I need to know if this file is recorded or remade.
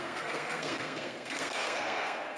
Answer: remade